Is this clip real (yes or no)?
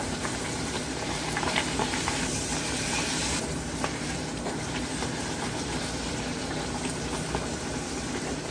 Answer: no